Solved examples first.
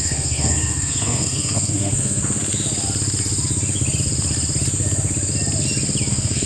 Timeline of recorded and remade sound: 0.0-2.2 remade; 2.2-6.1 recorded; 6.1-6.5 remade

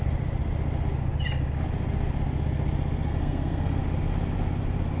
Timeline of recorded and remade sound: 0.0-3.1 recorded; 3.1-3.8 remade; 3.8-5.0 recorded

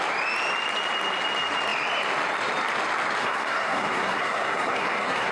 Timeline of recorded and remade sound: 0.0-3.2 recorded; 3.2-5.3 remade

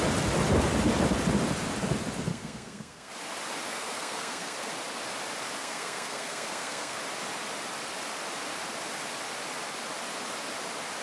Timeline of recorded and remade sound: 0.0-2.3 recorded; 2.3-3.1 remade; 3.1-3.7 recorded; 3.7-4.7 remade; 4.7-5.6 recorded; 5.6-7.0 remade; 7.0-11.0 recorded

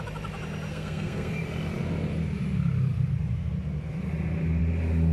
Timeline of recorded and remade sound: 0.0-0.7 recorded; 0.7-1.3 remade; 1.3-5.1 recorded

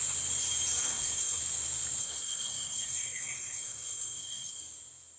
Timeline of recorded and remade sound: 0.0-0.8 recorded; 0.8-1.4 remade; 1.4-2.0 recorded; 2.0-4.6 remade; 4.6-5.2 recorded

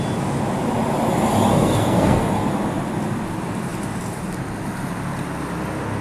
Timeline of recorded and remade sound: 0.0-1.5 recorded; 1.5-2.5 remade; 2.5-6.0 recorded

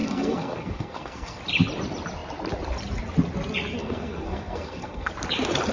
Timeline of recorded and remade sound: 0.0-1.4 remade; 1.4-3.8 recorded; 3.8-5.1 remade; 5.1-5.7 recorded